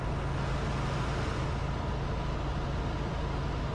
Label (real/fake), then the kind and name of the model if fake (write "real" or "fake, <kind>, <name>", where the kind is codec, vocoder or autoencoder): real